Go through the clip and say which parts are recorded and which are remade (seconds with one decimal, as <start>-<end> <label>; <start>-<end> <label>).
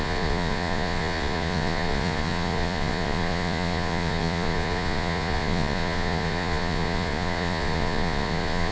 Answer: 0.0-8.7 remade